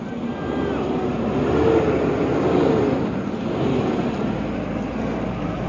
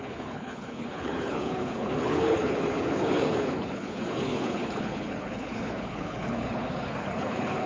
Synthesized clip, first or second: second